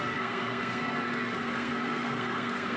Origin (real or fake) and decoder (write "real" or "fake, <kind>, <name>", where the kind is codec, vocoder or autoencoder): fake, codec, SNAC